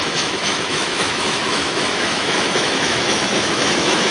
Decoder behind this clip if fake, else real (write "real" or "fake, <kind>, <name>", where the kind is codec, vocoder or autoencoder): fake, autoencoder, DAC-VAE